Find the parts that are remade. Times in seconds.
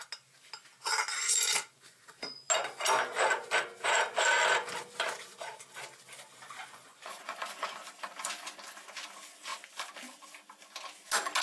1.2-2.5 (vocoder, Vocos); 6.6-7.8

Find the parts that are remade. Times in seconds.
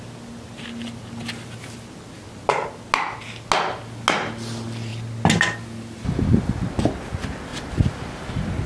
none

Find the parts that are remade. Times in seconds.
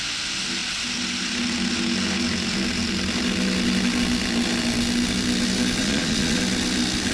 5.8-6.4 (vocoder, Vocos)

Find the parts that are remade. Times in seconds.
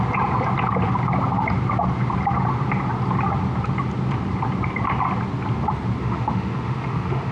6.0-7.3 (autoencoder, DAC-VAE)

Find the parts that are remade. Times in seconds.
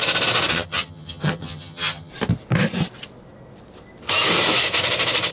0.5-2.1 (vocoder, HiFi-GAN)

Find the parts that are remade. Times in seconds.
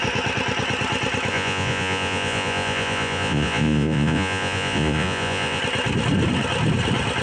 1.3-5.6 (vocoder, Vocos)